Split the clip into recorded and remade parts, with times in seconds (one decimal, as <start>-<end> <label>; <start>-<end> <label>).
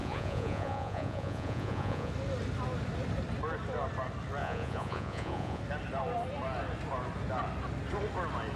0.0-2.1 remade; 2.1-4.4 recorded; 4.4-5.6 remade; 5.6-8.6 recorded